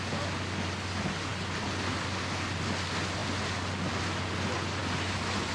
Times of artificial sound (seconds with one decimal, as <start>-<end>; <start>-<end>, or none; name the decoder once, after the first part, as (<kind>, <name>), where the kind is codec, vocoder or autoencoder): none